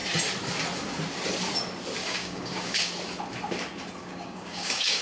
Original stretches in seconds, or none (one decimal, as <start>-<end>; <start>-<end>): 0.0-2.0; 2.9-4.0